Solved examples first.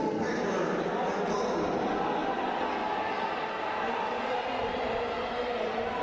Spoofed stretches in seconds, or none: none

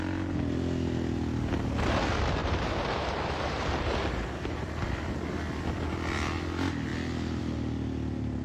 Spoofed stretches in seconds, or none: 2.4-4.9

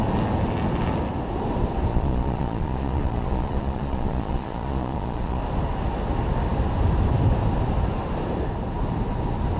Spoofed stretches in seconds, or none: 1.9-5.4

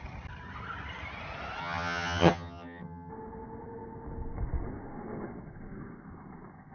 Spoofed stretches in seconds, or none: 1.6-3.1

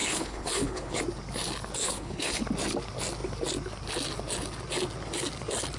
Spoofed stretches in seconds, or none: 0.0-1.0; 1.8-2.4

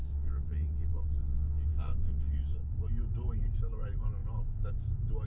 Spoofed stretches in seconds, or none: 0.0-2.7

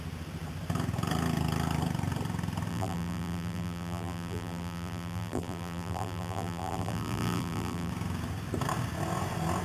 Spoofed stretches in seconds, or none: 2.7-7.9